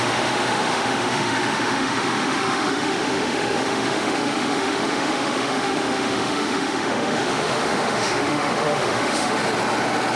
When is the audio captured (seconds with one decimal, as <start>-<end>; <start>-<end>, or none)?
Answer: 9.4-10.2